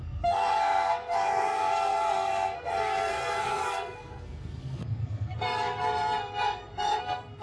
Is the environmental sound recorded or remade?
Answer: remade